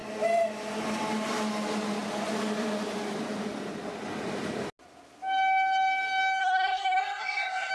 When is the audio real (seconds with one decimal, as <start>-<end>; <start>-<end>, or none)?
0.0-6.4